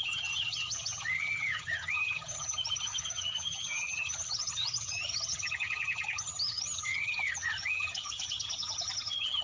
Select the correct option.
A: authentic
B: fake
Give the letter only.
B